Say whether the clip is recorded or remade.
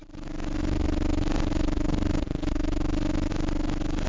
recorded